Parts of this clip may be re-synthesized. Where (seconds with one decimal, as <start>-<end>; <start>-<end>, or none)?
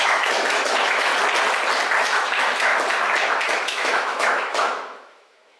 0.0-1.1; 2.0-2.7; 3.3-5.6